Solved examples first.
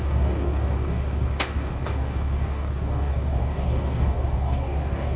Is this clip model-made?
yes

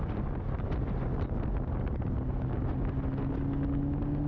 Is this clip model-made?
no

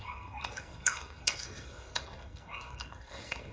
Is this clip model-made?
yes